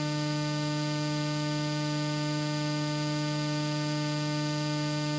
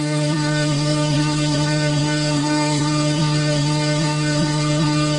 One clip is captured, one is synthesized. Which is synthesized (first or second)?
second